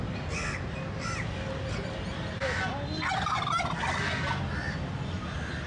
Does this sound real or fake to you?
real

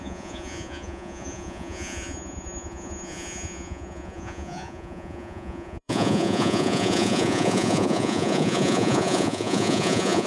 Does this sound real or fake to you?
fake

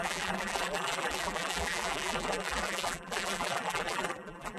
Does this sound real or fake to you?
fake